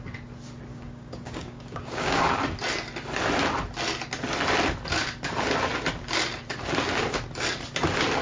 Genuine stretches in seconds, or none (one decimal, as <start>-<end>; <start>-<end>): 0.0-0.7; 2.2-8.2